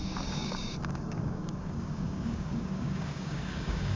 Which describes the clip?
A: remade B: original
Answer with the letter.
A